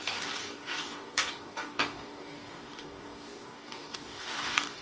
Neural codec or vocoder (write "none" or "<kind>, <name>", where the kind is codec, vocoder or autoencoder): codec, DAC